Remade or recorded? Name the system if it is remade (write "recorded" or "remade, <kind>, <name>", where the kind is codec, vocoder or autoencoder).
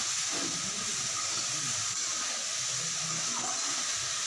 recorded